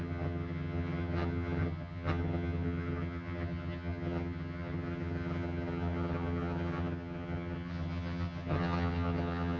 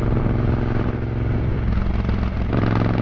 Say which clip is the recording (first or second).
second